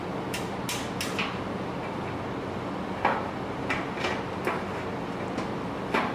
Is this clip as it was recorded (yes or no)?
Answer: yes